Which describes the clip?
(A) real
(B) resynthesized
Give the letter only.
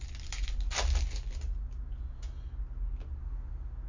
A